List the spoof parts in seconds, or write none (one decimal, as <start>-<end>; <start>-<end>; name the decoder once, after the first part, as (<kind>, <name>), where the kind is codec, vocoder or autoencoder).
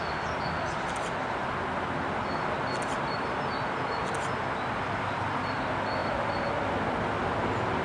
none